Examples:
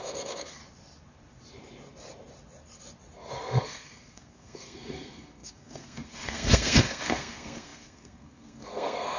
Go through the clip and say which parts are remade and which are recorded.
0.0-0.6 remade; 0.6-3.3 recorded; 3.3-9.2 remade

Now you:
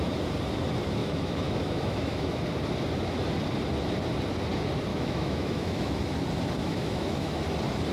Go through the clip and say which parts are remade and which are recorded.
0.0-1.0 recorded; 1.0-2.4 remade; 2.4-4.9 recorded; 4.9-6.0 remade; 6.0-6.6 recorded; 6.6-7.4 remade; 7.4-7.9 recorded

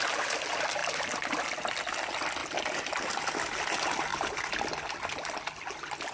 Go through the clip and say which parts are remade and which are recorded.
0.0-0.8 recorded; 0.8-1.4 remade; 1.4-2.4 recorded; 2.4-3.1 remade; 3.1-4.1 recorded; 4.1-5.4 remade; 5.4-6.1 recorded